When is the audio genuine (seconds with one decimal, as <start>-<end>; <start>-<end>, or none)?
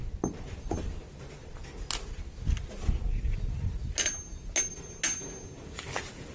0.0-6.3